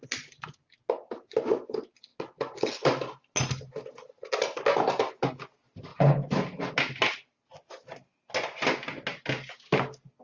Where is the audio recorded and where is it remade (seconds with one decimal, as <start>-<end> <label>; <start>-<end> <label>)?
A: 0.0-10.2 recorded